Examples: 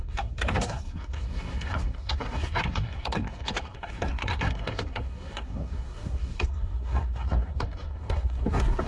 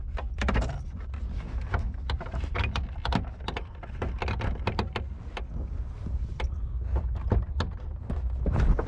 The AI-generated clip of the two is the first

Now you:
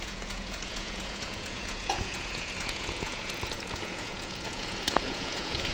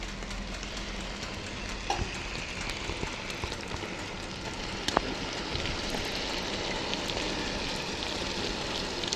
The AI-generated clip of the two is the first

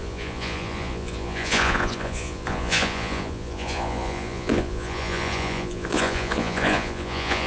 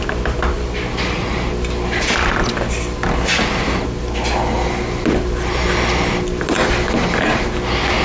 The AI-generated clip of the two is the first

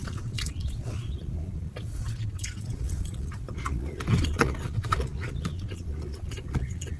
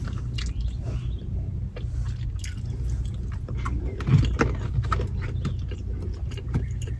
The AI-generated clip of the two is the first